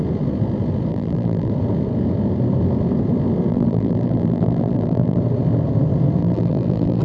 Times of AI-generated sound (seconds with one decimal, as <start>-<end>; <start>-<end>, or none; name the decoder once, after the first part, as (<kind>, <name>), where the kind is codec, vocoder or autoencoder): 0.9-1.5 (vocoder, BigVGAN v2); 3.5-5.2; 6.2-7.0